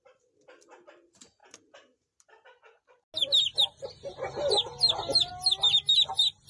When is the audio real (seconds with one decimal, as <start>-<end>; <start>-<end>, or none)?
0.0-6.5